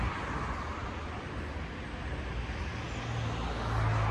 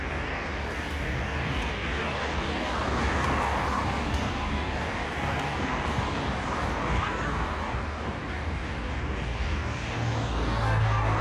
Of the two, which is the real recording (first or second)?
first